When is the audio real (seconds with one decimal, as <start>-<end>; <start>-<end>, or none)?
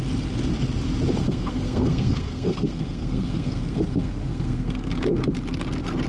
0.0-1.2; 4.9-6.1